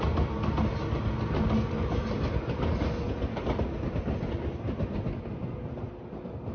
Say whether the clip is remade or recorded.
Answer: recorded